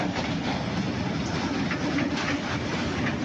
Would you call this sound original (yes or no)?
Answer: yes